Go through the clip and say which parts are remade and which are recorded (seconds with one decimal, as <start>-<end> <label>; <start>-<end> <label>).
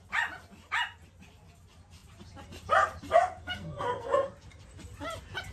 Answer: 0.0-3.4 recorded; 3.4-4.3 remade; 4.3-5.5 recorded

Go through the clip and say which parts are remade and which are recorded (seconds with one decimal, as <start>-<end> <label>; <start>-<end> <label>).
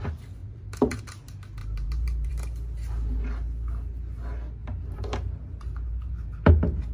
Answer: 0.0-0.4 recorded; 0.4-1.0 remade; 1.0-1.6 recorded; 1.6-2.3 remade; 2.3-4.6 recorded; 4.6-6.5 remade; 6.5-6.9 recorded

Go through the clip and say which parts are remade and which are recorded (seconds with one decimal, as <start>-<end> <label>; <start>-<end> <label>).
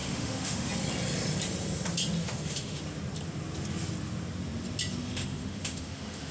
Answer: 0.0-0.7 remade; 0.7-2.2 recorded; 2.2-2.8 remade; 2.8-5.0 recorded; 5.0-6.3 remade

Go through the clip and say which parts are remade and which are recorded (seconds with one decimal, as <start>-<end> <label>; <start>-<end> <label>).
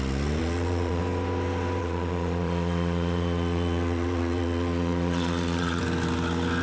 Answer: 0.0-0.4 recorded; 0.4-1.0 remade; 1.0-1.8 recorded; 1.8-5.8 remade; 5.8-6.6 recorded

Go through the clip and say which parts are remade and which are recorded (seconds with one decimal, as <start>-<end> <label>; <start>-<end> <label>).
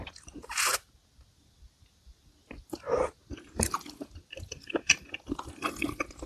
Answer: 0.0-6.3 recorded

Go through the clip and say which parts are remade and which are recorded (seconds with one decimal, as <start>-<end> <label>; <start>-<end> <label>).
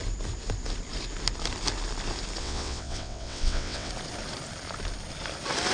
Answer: 0.0-2.4 recorded; 2.4-3.9 remade; 3.9-5.7 recorded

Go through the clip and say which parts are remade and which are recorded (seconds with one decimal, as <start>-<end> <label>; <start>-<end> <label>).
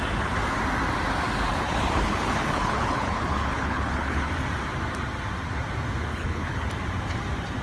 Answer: 0.0-1.5 recorded; 1.5-4.3 remade; 4.3-6.1 recorded; 6.1-6.7 remade; 6.7-7.6 recorded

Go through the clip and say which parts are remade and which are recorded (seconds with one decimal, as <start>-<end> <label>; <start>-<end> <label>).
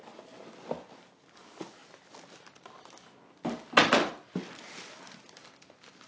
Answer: 0.0-6.1 recorded